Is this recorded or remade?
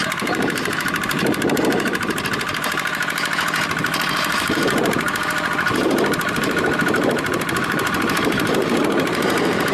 remade